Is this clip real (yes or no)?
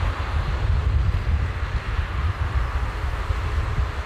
yes